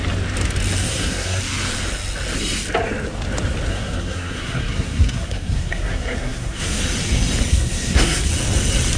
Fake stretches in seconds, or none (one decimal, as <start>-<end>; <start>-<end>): 0.8-1.4; 3.7-6.8; 7.5-8.3